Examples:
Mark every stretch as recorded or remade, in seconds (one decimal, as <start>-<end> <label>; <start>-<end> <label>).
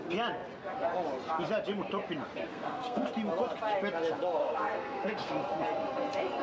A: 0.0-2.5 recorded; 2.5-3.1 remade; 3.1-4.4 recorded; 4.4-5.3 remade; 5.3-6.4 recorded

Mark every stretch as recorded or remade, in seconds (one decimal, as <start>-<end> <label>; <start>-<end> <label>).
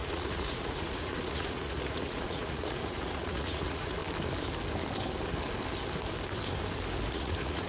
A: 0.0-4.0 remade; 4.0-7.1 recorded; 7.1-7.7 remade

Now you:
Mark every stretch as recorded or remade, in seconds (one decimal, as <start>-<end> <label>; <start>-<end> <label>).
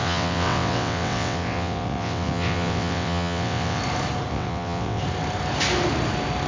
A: 0.0-3.8 remade; 3.8-4.3 recorded; 4.3-5.0 remade; 5.0-6.5 recorded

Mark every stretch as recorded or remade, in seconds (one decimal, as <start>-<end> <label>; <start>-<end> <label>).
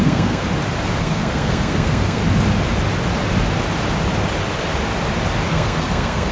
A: 0.0-0.4 remade; 0.4-1.0 recorded; 1.0-2.2 remade; 2.2-5.5 recorded; 5.5-6.3 remade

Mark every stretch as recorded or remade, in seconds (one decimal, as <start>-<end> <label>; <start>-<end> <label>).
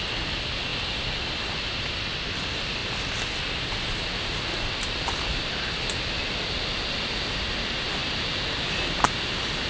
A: 0.0-9.7 recorded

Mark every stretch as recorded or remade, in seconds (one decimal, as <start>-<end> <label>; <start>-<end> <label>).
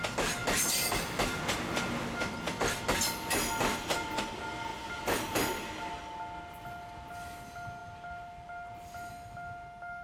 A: 0.0-10.0 recorded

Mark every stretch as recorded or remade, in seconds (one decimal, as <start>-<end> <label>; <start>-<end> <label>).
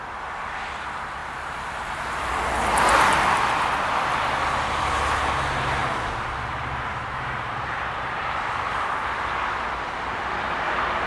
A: 0.0-1.2 recorded; 1.2-2.0 remade; 2.0-5.8 recorded; 5.8-8.8 remade; 8.8-11.1 recorded